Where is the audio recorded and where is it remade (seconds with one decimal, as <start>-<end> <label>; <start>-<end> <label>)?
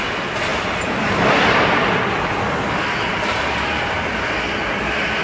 0.0-0.5 recorded; 0.5-2.0 remade; 2.0-3.1 recorded; 3.1-3.7 remade; 3.7-5.2 recorded